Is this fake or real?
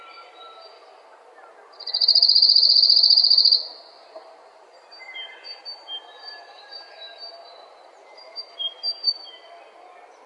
fake